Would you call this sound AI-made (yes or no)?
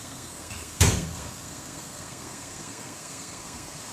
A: yes